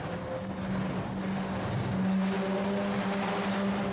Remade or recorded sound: recorded